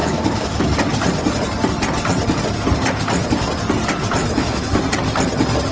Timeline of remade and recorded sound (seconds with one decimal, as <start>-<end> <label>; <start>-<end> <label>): 0.0-0.6 remade; 0.6-4.2 recorded; 4.2-4.8 remade; 4.8-5.7 recorded